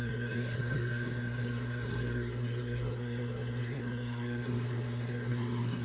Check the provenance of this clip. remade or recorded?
remade